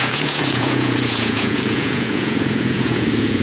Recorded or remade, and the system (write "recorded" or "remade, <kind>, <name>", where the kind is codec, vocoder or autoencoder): remade, vocoder, Vocos